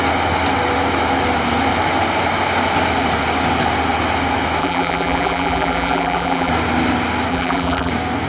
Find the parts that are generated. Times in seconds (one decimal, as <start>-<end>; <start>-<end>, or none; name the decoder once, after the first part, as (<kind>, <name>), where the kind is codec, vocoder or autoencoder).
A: 4.6-6.5 (vocoder, BigVGAN v2); 7.3-7.9